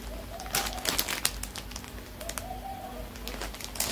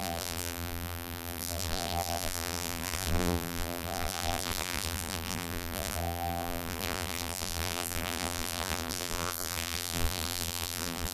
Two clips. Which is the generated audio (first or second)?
second